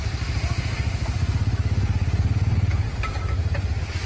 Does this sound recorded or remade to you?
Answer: recorded